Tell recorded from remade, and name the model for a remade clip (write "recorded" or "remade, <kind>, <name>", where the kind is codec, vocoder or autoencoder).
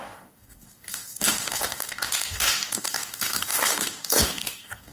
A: remade, codec, DAC